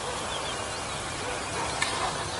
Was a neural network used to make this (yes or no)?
no